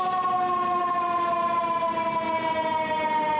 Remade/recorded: recorded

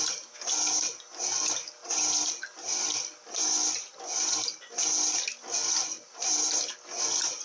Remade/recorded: recorded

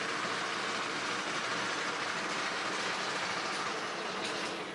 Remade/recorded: recorded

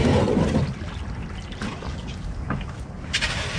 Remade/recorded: recorded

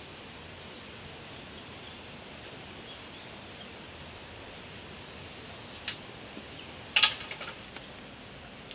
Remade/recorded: recorded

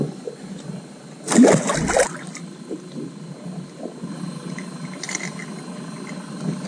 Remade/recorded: recorded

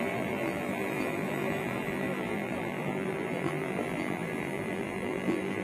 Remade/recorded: remade